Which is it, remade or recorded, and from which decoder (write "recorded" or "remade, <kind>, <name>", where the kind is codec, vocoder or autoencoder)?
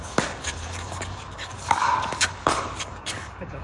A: remade, codec, DAC